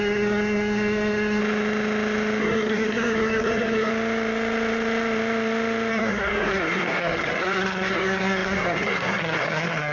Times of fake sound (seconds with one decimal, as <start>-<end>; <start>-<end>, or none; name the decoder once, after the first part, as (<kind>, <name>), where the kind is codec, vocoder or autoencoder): 0.0-1.4 (codec, SNAC); 2.4-3.9; 5.9-9.9